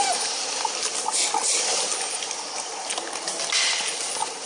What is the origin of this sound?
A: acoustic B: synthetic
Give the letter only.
A